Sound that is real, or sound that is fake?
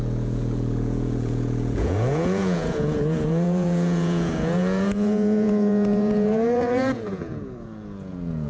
fake